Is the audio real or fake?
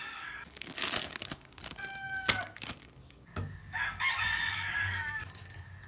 fake